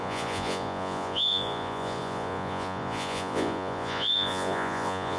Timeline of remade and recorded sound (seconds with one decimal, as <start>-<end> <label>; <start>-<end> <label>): 0.0-5.2 remade